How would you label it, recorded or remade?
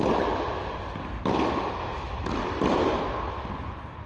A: recorded